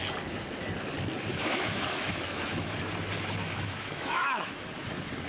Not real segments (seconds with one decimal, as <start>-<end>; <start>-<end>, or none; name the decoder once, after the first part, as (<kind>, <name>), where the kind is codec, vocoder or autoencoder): 1.3-2.8 (autoencoder, DAC-VAE); 3.4-4.6